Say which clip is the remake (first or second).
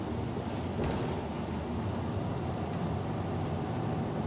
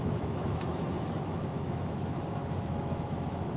second